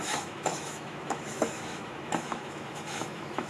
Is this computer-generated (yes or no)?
yes